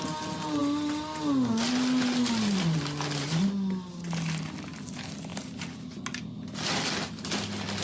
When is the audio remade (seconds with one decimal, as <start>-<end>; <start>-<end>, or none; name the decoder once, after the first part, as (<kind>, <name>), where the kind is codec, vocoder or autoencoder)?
5.3-6.0 (vocoder, BigVGAN v2)